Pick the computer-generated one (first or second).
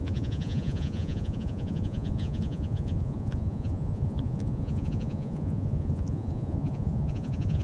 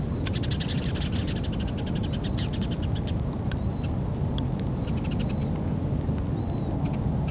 first